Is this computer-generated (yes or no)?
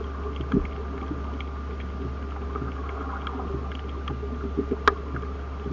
no